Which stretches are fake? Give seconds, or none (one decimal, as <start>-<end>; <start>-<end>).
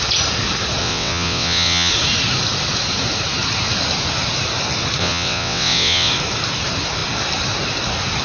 0.8-1.9; 5.0-6.1